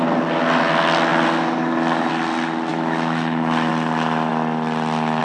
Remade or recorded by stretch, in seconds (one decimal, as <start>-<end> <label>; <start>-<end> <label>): 0.0-2.7 recorded; 2.7-3.7 remade; 3.7-5.2 recorded